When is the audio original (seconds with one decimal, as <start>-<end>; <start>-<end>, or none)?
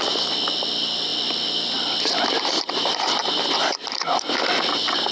0.0-5.1